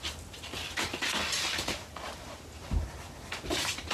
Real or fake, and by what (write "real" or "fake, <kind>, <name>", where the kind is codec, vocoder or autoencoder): real